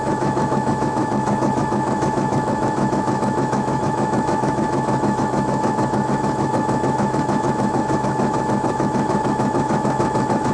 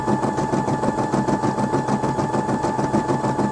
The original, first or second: second